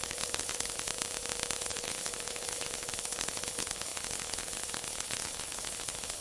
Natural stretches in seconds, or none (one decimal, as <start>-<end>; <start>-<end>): 0.9-1.6